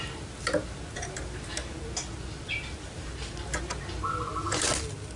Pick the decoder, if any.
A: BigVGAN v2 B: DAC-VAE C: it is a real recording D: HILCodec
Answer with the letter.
C